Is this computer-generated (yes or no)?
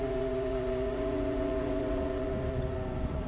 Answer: yes